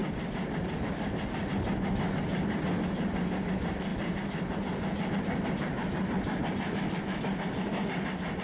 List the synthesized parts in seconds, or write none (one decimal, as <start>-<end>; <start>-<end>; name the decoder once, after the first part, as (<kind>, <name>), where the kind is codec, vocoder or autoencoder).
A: 5.8-7.0 (vocoder, BigVGAN v2)